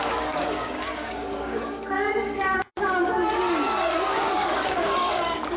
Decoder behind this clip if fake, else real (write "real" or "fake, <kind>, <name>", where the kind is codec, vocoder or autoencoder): fake, codec, DAC